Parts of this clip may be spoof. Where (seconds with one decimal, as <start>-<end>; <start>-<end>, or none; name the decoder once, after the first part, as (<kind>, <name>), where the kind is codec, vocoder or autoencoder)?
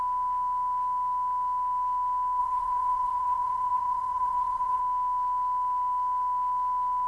2.4-4.8 (vocoder, WaveNeXt)